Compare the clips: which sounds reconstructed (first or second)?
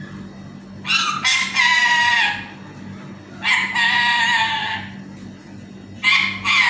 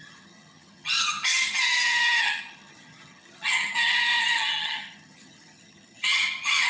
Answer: second